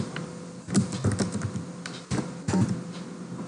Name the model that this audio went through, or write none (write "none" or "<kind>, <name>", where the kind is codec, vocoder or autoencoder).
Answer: none